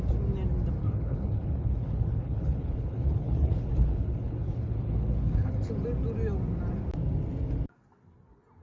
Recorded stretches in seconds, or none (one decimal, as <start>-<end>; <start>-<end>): 0.0-0.8; 5.7-8.6